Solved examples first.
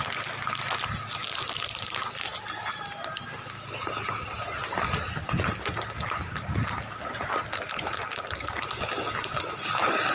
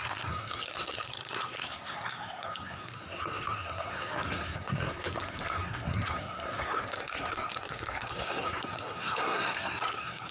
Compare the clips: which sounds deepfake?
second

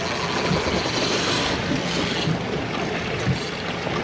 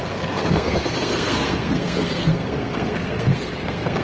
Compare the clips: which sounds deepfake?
second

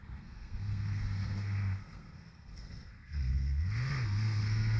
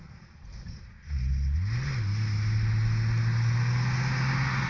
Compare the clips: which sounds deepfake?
first